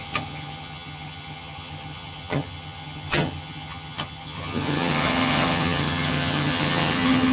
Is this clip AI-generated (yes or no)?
yes